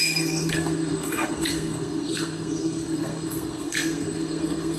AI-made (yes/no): yes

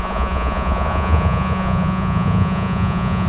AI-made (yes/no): yes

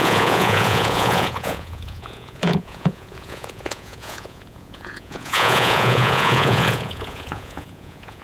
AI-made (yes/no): yes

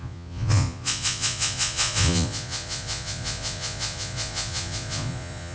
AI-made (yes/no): yes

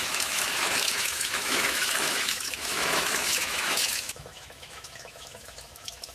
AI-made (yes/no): yes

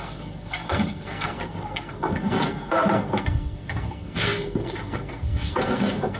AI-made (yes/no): yes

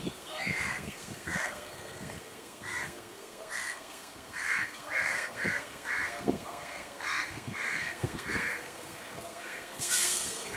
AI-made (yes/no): yes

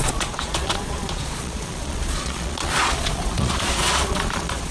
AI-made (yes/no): yes